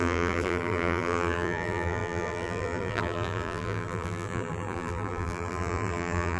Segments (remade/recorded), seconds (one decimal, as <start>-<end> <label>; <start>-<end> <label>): 0.0-6.4 remade